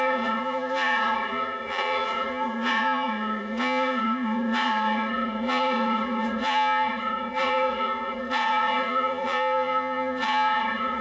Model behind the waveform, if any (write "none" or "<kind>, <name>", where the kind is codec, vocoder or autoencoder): vocoder, Vocos